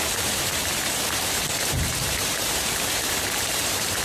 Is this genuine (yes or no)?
no